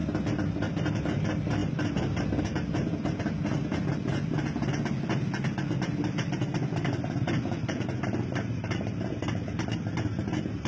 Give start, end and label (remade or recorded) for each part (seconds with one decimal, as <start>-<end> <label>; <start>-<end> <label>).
0.0-10.7 recorded